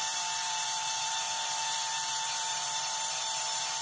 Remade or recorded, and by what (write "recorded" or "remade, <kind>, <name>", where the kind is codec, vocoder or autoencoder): remade, vocoder, BigVGAN v2